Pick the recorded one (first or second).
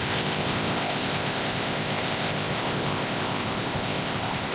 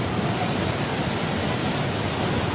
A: second